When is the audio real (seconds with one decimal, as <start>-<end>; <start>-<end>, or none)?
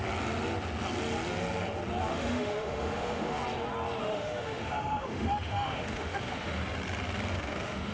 0.0-2.1; 3.4-4.0; 6.6-7.3